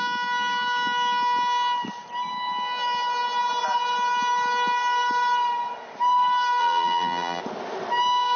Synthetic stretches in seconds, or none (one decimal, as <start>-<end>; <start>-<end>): 6.6-7.4